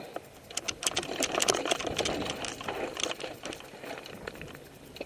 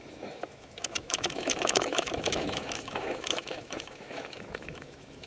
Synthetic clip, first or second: second